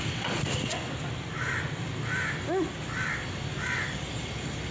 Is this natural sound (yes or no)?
yes